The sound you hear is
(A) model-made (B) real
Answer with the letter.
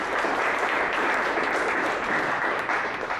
A